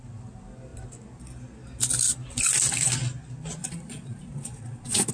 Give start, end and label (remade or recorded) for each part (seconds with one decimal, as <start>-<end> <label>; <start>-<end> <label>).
0.0-3.6 recorded; 3.6-5.1 remade